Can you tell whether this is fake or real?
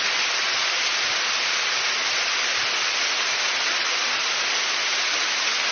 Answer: real